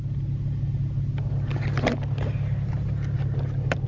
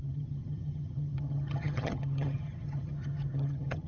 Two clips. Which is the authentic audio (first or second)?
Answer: first